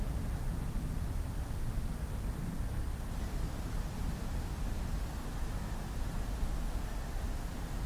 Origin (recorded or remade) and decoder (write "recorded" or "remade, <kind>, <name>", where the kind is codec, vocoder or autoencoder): recorded